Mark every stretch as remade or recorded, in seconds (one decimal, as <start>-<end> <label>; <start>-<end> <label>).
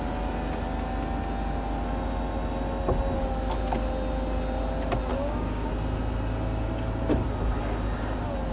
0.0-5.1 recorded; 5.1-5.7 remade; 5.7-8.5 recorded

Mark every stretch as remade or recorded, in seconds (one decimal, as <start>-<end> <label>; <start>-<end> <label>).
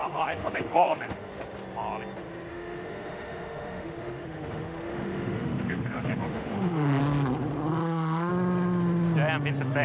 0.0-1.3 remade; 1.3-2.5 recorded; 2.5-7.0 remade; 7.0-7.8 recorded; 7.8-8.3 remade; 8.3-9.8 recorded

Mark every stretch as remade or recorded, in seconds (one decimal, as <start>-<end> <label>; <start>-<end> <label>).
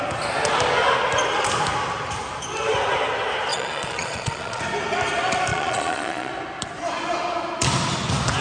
0.0-3.5 recorded; 3.5-4.6 remade; 4.6-5.5 recorded; 5.5-6.3 remade; 6.3-8.4 recorded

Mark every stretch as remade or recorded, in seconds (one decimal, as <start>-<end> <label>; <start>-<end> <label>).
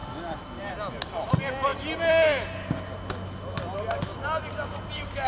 0.0-0.7 remade; 0.7-5.3 recorded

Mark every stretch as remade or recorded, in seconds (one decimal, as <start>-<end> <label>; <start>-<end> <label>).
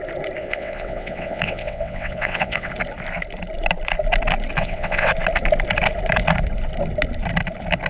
0.0-0.4 recorded; 0.4-2.7 remade; 2.7-4.6 recorded; 4.6-5.1 remade; 5.1-7.9 recorded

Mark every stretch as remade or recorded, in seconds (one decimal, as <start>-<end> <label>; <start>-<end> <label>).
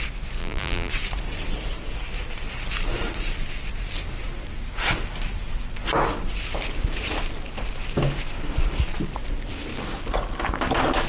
0.0-0.4 recorded; 0.4-0.9 remade; 0.9-11.1 recorded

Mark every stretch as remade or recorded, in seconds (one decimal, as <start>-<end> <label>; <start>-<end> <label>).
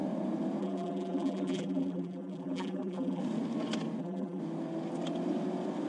0.0-0.6 recorded; 0.6-3.2 remade; 3.2-4.0 recorded; 4.0-4.4 remade; 4.4-5.9 recorded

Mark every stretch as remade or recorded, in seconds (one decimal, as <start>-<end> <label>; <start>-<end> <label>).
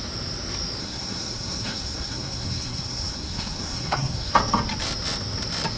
0.0-0.8 recorded; 0.8-4.3 remade; 4.3-5.8 recorded